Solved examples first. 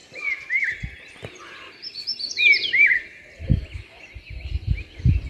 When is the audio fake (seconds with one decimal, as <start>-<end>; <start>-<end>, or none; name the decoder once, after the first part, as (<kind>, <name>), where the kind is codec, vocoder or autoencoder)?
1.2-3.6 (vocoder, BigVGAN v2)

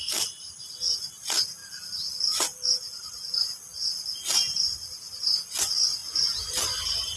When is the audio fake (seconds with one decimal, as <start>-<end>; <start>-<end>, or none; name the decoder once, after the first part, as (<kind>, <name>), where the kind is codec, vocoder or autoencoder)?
none

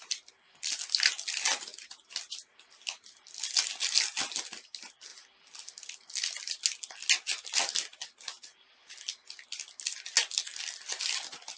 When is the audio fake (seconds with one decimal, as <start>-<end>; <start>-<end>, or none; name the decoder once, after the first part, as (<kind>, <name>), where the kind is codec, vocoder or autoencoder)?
none

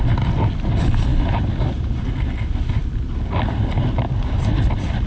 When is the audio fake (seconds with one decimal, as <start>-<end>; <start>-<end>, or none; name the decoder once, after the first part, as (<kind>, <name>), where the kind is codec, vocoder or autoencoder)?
none

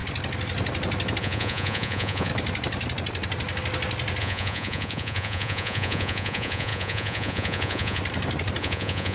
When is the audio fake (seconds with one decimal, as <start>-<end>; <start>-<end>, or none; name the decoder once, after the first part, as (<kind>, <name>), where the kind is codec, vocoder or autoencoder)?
1.2-2.3 (vocoder, Vocos); 4.2-8.0; 8.6-9.1

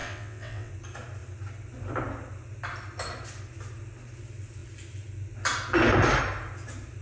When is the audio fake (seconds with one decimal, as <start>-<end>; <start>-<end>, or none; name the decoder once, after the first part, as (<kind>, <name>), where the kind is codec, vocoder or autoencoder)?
0.0-0.7 (vocoder, WaveNeXt)